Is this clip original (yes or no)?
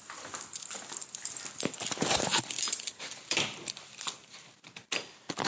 yes